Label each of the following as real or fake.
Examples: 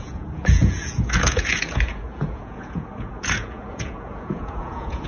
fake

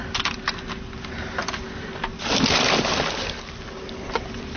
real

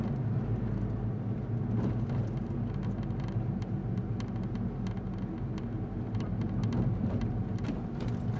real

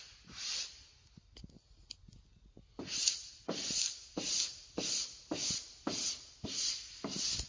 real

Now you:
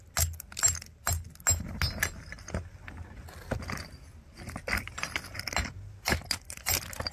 real